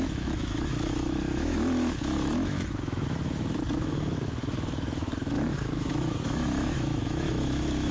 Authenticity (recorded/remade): remade